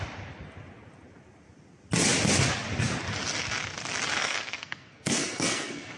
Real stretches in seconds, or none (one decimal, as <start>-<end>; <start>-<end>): 0.0-4.2